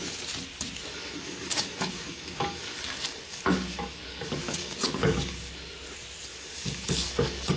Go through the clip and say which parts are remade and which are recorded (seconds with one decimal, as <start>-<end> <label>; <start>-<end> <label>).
0.0-0.9 recorded; 0.9-5.5 remade; 5.5-6.3 recorded; 6.3-7.6 remade